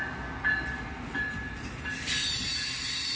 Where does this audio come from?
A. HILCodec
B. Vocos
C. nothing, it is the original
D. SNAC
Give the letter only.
C